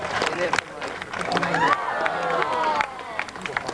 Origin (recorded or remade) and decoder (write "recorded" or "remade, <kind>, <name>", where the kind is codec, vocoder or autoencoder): remade, vocoder, BigVGAN v2